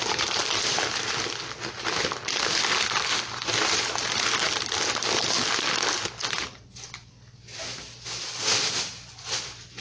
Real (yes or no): yes